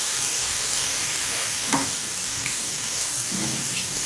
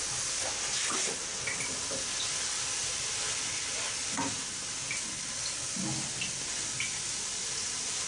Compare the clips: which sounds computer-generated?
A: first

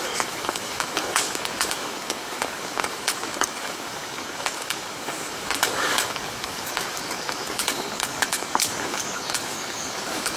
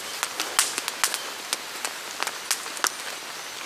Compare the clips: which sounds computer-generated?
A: first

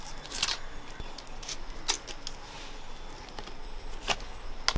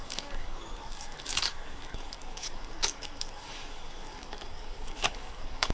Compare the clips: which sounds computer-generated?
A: second